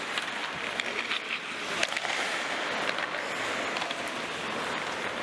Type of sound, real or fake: real